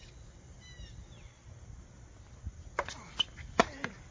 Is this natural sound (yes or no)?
yes